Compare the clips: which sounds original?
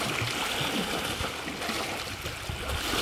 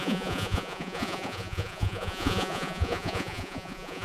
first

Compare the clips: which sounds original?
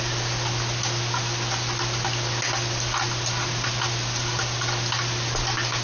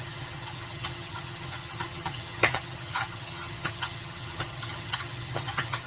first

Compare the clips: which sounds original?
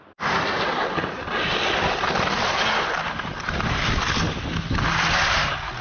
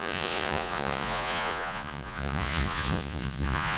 first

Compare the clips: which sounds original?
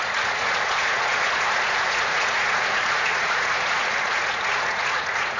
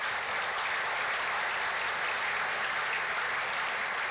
second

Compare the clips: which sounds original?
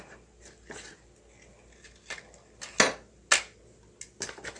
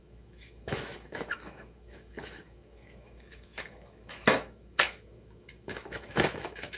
first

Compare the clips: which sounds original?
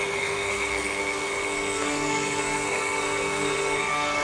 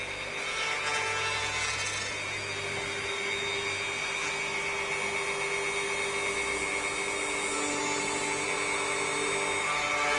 second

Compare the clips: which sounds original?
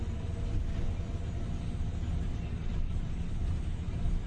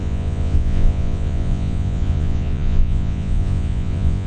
first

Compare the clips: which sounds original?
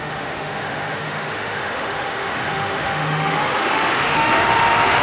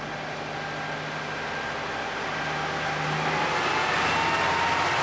second